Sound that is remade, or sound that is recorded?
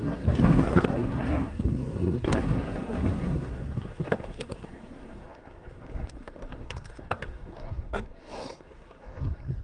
remade